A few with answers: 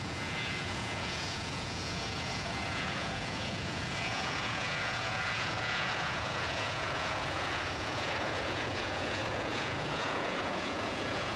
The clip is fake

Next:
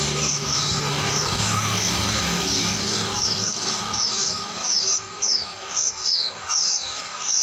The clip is fake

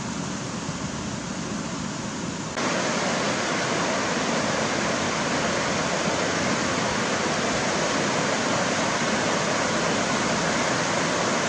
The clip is real